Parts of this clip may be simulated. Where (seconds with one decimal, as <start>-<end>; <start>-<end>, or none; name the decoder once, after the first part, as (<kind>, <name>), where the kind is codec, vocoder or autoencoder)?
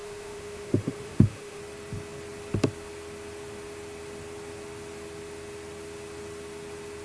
0.0-1.6 (autoencoder, DAC-VAE)